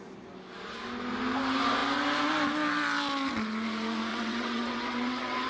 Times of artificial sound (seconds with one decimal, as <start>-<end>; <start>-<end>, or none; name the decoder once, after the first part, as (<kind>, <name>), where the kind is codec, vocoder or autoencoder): 4.1-5.5 (vocoder, WaveNeXt)